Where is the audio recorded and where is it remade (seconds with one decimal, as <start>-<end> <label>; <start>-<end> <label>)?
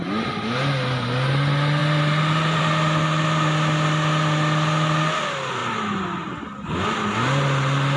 0.0-8.0 recorded